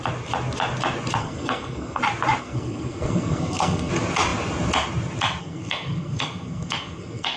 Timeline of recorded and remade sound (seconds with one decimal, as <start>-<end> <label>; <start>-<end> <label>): 0.0-1.2 recorded; 1.2-2.0 remade; 2.0-2.4 recorded; 2.4-3.9 remade; 3.9-5.4 recorded; 5.4-7.4 remade